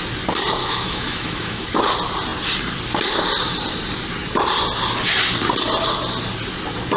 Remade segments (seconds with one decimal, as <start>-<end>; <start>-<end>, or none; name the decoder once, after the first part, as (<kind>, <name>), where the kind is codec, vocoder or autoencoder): 0.6-1.8 (autoencoder, DAC-VAE)